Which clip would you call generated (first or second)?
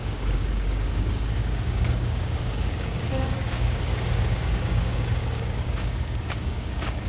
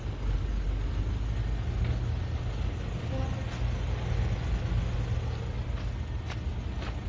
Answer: first